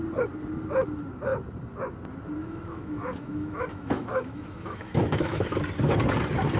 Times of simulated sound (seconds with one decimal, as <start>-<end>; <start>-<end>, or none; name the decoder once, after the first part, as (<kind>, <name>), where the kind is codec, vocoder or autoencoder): 2.4-5.6 (autoencoder, DAC-VAE)